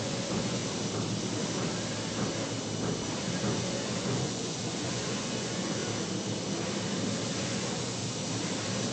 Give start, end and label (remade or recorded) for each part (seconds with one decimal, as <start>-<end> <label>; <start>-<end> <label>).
0.0-0.6 remade; 0.6-3.2 recorded; 3.2-5.8 remade; 5.8-7.3 recorded; 7.3-8.0 remade; 8.0-8.9 recorded